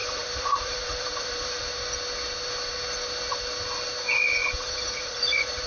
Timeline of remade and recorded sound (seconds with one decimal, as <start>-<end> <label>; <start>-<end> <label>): 0.0-1.6 remade; 1.6-4.4 recorded; 4.4-5.7 remade